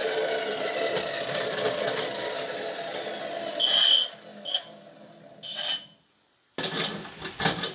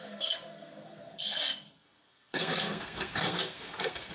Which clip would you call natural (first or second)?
first